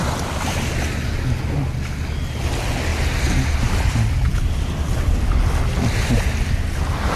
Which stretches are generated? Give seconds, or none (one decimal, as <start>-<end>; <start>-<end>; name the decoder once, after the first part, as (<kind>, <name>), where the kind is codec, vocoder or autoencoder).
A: none